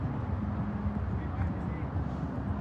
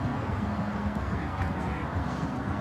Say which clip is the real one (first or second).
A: first